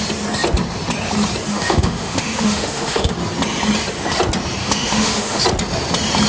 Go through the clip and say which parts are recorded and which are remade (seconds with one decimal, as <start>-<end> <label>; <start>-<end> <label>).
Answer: 0.0-1.5 recorded; 1.5-3.1 remade; 3.1-4.6 recorded; 4.6-5.4 remade; 5.4-6.3 recorded